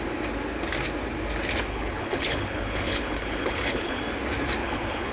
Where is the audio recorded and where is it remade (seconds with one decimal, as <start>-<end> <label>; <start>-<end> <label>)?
0.0-1.7 recorded; 1.7-4.0 remade; 4.0-4.6 recorded; 4.6-5.1 remade